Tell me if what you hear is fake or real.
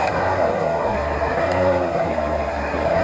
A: fake